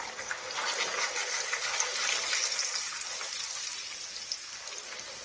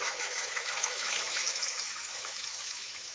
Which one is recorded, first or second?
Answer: first